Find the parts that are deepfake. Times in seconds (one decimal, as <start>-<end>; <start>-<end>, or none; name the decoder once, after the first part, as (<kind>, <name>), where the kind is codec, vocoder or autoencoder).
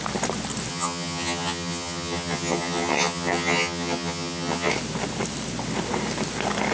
0.7-4.7 (vocoder, HiFi-GAN)